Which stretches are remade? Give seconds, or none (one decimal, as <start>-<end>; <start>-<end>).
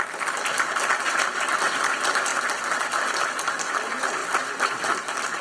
none